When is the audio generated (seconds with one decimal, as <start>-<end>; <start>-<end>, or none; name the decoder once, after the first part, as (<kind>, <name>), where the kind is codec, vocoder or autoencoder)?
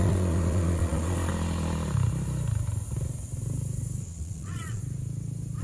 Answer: 0.0-1.3 (vocoder, Vocos); 4.0-4.8